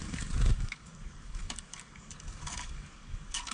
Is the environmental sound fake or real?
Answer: fake